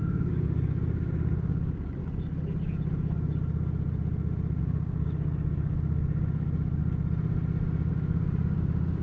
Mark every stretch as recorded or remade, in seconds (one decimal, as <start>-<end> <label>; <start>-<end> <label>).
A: 0.0-2.0 remade; 2.0-4.6 recorded; 4.6-6.8 remade; 6.8-7.9 recorded; 7.9-9.0 remade